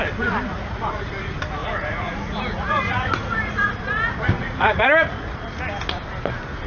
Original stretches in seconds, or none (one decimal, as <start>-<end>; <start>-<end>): 0.0-0.5; 1.1-1.6; 5.6-6.7